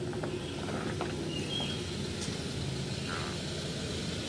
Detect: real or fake real